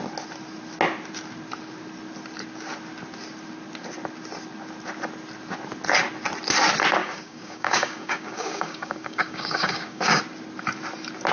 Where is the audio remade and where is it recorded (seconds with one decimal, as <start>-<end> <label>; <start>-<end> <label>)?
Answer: 0.0-7.0 recorded; 7.0-10.2 remade; 10.2-11.3 recorded